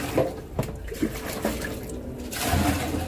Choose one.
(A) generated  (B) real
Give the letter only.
B